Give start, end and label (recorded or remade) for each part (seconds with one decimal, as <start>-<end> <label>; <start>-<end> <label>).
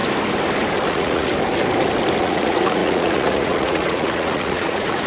0.0-0.9 recorded; 0.9-1.3 remade; 1.3-2.2 recorded; 2.2-5.1 remade